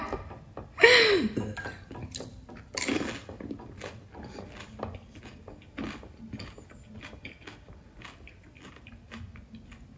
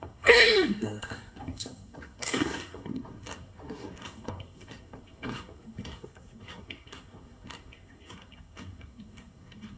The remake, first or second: second